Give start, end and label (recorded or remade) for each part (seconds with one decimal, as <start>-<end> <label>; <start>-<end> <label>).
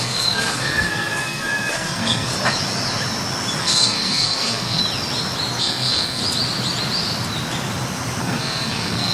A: 0.0-2.3 remade; 2.3-3.6 recorded; 3.6-4.8 remade; 4.8-5.6 recorded; 5.6-6.2 remade; 6.2-8.2 recorded; 8.2-9.1 remade